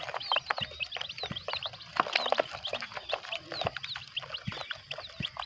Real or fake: real